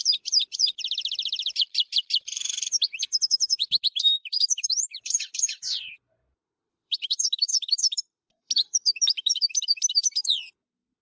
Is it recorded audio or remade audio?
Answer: remade